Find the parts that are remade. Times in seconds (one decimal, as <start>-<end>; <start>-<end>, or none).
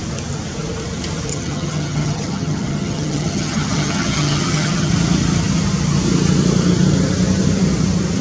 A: 1.3-4.9